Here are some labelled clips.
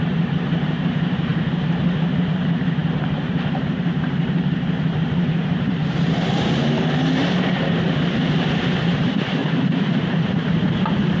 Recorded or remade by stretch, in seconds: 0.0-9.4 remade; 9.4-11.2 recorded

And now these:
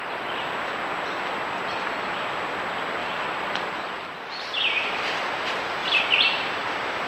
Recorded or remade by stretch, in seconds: 0.0-3.0 recorded; 3.0-3.5 remade; 3.5-7.1 recorded

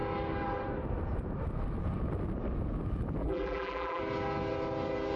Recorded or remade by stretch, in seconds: 0.0-3.2 recorded; 3.2-4.0 remade; 4.0-5.2 recorded

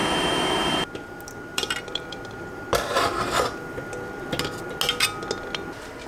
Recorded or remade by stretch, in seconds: 0.0-3.7 remade; 3.7-6.1 recorded